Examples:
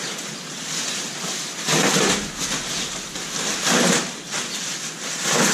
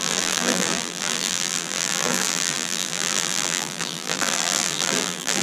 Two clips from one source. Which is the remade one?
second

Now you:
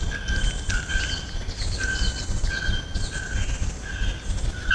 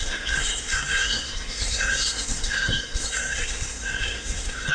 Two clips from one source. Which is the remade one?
second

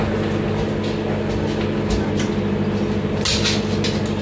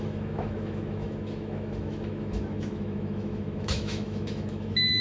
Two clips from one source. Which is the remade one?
second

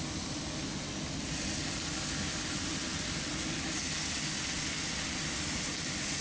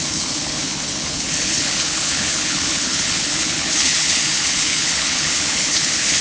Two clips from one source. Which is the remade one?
second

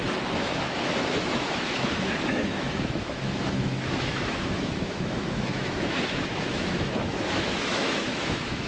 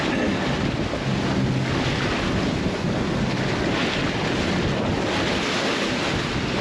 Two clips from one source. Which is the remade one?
first